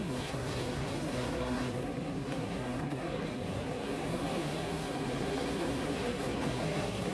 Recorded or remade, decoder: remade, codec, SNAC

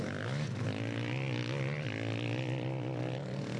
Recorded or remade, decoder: recorded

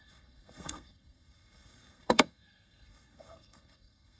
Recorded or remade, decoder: remade, codec, SNAC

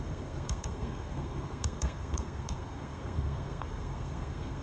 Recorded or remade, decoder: remade, codec, SNAC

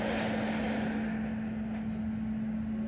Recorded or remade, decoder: recorded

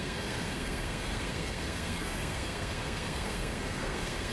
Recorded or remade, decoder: remade, codec, SNAC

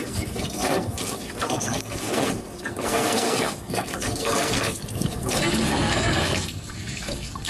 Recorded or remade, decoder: remade, codec, SNAC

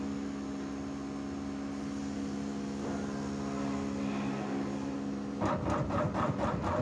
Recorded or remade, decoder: recorded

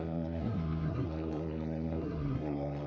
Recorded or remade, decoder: remade, codec, SNAC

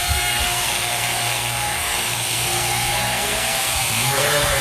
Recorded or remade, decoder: remade, codec, SNAC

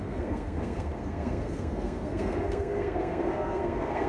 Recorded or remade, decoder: remade, codec, SNAC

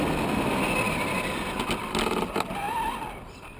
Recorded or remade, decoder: recorded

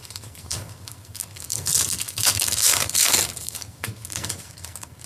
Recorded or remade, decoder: remade, codec, SNAC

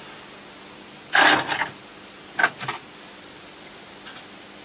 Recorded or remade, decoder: recorded